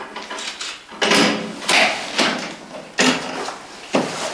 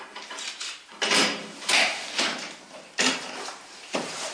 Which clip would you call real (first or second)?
first